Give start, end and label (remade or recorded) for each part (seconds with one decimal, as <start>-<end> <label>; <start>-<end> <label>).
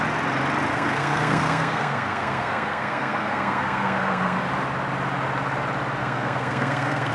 0.0-0.7 recorded; 0.7-4.5 remade; 4.5-6.0 recorded; 6.0-7.1 remade